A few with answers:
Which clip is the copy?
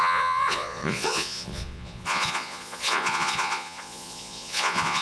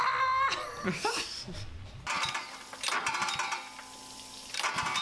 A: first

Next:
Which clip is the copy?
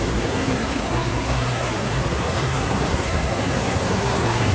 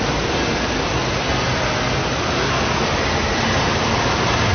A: first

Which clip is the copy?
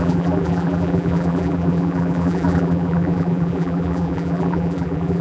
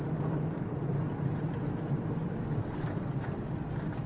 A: first